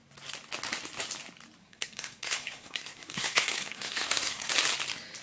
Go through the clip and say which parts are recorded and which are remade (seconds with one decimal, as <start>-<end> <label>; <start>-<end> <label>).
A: 0.0-1.6 recorded; 1.6-4.5 remade; 4.5-5.2 recorded